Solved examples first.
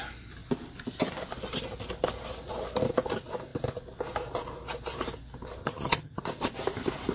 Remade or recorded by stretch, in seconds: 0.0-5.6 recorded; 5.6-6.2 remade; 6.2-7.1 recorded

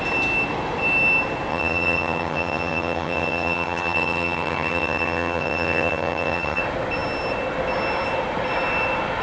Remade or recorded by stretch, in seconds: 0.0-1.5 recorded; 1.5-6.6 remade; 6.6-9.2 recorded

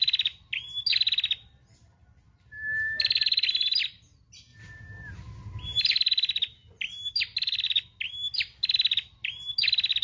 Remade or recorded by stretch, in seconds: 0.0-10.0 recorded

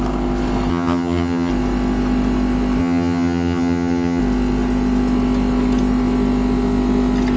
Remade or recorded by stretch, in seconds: 0.0-0.7 recorded; 0.7-1.5 remade; 1.5-2.8 recorded; 2.8-4.2 remade; 4.2-7.4 recorded

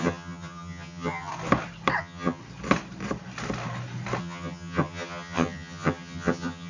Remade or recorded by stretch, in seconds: 0.0-1.3 remade; 1.3-2.0 recorded; 2.0-2.4 remade; 2.4-4.2 recorded; 4.2-6.7 remade

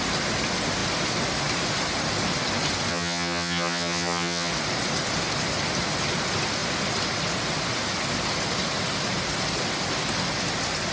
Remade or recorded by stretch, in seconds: 0.0-2.9 recorded; 2.9-4.5 remade; 4.5-10.9 recorded

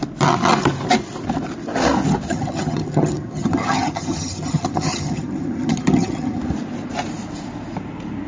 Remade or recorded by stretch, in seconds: 0.0-2.3 recorded; 2.3-6.4 remade; 6.4-8.3 recorded